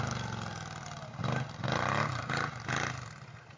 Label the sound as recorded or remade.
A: recorded